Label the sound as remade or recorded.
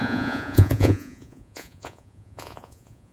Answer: remade